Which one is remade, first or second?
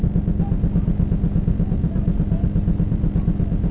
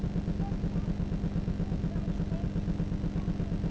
first